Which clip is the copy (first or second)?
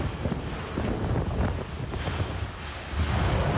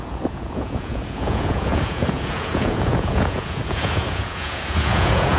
second